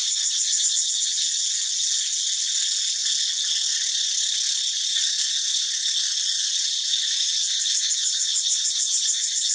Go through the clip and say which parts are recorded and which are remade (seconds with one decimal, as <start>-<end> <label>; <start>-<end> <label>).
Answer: 0.0-0.6 remade; 0.6-9.5 recorded